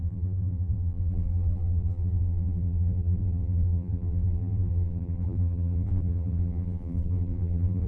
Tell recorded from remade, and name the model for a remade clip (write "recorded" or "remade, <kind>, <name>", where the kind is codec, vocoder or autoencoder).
remade, vocoder, BigVGAN v2